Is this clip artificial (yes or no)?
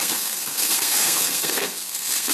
yes